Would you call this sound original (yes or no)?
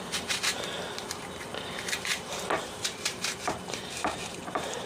no